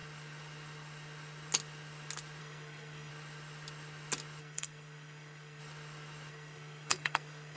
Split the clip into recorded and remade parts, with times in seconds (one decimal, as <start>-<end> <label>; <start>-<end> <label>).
0.0-2.4 recorded; 2.4-3.1 remade; 3.1-4.4 recorded; 4.4-5.6 remade; 5.6-6.3 recorded; 6.3-7.6 remade

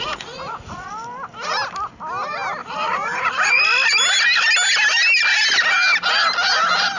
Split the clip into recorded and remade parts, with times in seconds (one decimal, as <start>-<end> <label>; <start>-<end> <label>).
0.0-0.9 remade; 0.9-2.6 recorded; 2.6-3.6 remade; 3.6-7.0 recorded

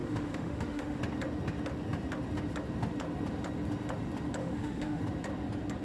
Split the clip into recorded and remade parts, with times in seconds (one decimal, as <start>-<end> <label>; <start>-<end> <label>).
0.0-1.0 remade; 1.0-4.4 recorded; 4.4-5.0 remade; 5.0-5.8 recorded